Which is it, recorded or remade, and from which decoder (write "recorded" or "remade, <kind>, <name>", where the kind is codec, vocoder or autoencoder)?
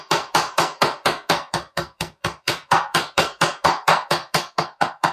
remade, codec, SNAC